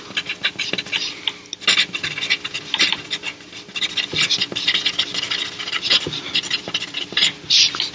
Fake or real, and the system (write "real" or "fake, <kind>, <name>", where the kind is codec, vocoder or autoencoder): real